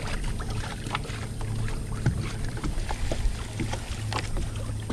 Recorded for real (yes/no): yes